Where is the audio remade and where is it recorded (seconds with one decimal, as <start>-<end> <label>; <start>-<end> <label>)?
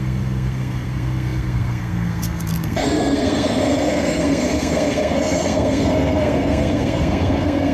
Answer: 0.0-7.7 remade